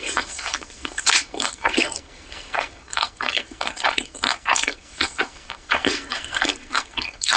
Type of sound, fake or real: fake